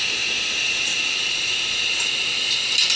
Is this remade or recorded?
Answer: recorded